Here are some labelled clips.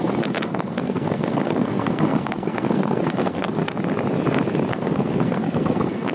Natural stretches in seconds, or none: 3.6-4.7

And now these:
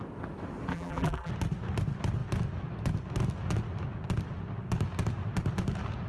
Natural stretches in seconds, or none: 0.0-0.7; 1.3-6.1

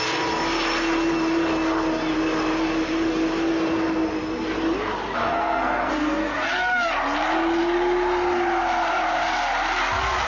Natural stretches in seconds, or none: 0.0-5.2; 5.9-10.3

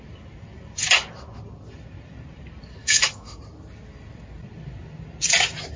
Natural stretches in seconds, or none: 0.0-2.8; 3.4-5.8